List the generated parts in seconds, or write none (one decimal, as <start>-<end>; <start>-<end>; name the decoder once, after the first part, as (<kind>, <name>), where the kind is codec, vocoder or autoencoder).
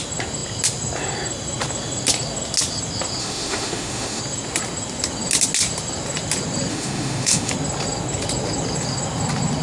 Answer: 3.2-4.2 (autoencoder, DAC-VAE); 6.7-7.5